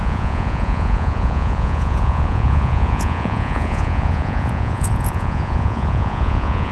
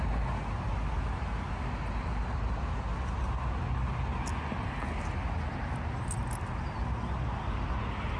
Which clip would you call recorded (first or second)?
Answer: second